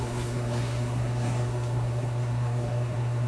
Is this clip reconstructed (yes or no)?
yes